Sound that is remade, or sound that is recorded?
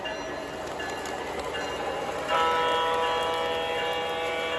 recorded